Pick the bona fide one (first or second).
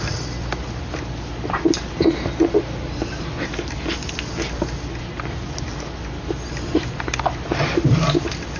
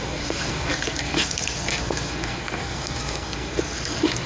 first